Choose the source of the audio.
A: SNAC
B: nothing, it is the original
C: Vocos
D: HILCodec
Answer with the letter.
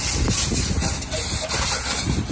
B